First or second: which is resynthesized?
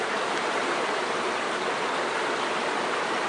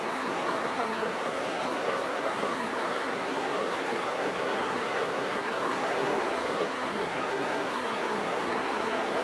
second